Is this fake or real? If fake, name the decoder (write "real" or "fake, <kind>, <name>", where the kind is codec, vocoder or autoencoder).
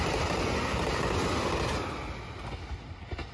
real